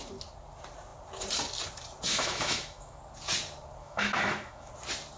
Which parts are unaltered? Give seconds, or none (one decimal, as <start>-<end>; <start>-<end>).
0.0-2.1; 3.0-3.8; 4.7-5.2